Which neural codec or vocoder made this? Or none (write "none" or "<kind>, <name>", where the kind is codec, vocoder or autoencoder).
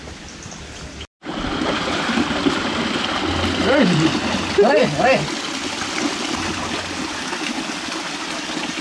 none